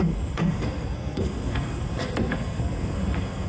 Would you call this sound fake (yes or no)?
yes